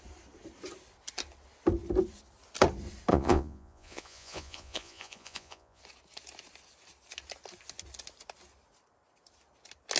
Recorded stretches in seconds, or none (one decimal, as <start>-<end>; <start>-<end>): 0.0-3.1; 5.8-10.0